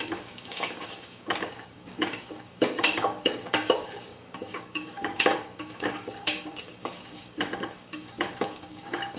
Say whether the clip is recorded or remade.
remade